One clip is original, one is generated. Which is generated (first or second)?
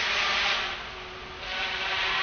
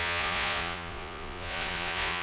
second